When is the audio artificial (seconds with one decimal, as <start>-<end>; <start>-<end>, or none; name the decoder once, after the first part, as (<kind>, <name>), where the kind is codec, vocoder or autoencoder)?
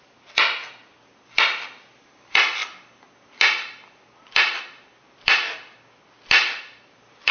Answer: none